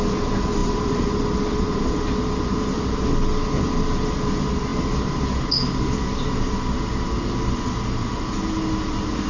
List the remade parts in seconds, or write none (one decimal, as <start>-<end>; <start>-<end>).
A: 0.6-1.8; 4.7-5.2